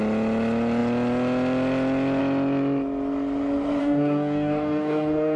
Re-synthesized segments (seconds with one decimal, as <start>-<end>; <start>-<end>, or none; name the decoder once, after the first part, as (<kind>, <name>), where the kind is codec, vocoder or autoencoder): 3.8-5.4 (codec, DAC)